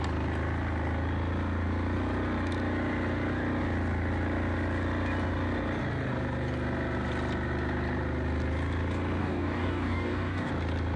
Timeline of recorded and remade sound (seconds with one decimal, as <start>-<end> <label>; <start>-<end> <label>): 0.0-9.2 recorded; 9.2-10.5 remade; 10.5-11.0 recorded